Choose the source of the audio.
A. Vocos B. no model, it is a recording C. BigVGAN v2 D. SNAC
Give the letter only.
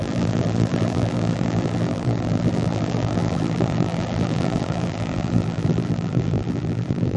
C